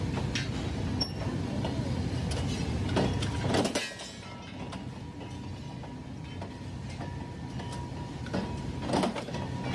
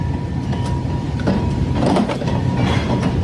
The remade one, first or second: second